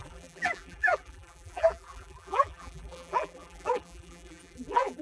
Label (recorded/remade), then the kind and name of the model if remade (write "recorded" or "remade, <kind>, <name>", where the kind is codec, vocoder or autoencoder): remade, vocoder, BigVGAN v2